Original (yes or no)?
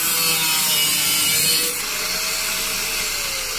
yes